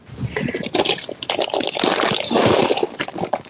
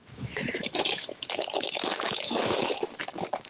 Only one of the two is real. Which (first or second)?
first